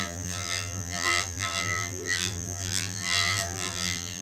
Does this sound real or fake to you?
fake